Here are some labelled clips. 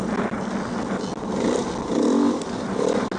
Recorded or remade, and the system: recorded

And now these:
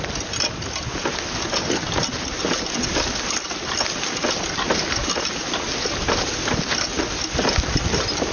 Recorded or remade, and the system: recorded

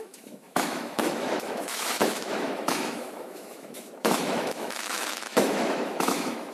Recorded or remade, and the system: remade, autoencoder, DAC-VAE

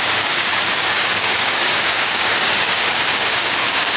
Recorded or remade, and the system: remade, codec, DAC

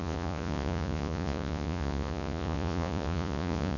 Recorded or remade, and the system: remade, vocoder, Vocos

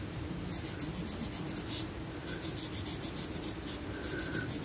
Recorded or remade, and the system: recorded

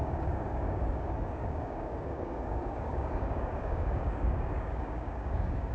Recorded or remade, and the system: remade, codec, DAC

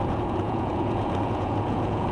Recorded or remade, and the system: remade, vocoder, Vocos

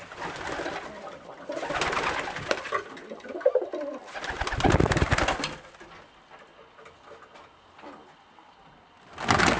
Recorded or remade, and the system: recorded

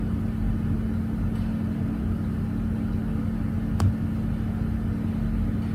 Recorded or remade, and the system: recorded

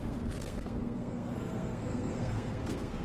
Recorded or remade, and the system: remade, codec, SNAC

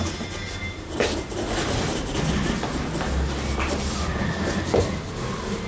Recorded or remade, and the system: recorded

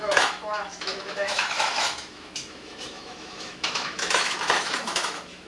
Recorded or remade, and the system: remade, autoencoder, DAC-VAE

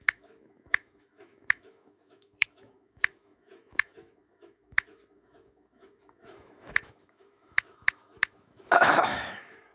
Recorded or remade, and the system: remade, autoencoder, DAC-VAE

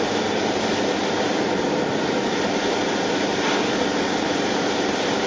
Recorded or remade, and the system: recorded